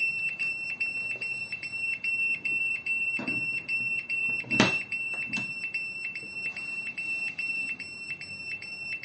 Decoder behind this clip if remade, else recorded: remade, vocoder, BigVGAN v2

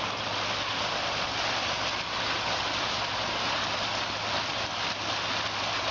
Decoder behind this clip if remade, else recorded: recorded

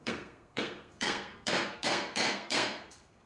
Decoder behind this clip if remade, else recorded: remade, codec, SNAC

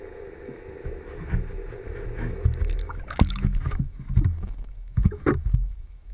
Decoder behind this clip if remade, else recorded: remade, autoencoder, DAC-VAE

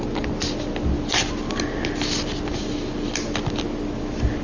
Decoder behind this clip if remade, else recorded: recorded